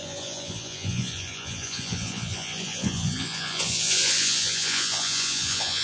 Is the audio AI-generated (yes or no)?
yes